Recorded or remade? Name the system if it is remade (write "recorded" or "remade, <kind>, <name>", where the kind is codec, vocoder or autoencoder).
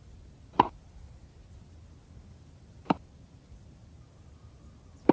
recorded